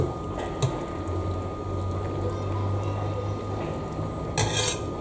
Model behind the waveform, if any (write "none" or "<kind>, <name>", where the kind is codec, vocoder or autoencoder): none